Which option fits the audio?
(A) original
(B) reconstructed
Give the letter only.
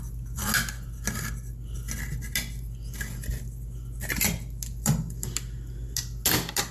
A